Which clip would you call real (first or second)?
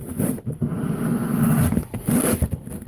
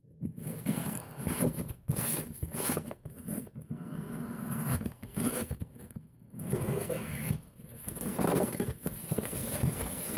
first